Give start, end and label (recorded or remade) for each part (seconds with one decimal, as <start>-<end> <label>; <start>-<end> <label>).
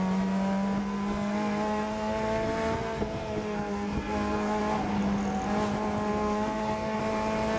0.0-0.8 recorded; 0.8-4.6 remade; 4.6-6.1 recorded; 6.1-7.0 remade; 7.0-7.6 recorded